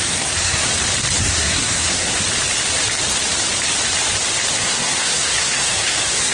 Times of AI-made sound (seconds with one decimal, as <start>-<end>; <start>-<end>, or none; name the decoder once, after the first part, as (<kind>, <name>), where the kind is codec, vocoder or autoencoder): 0.0-0.7 (codec, SNAC); 1.2-2.2; 4.6-6.3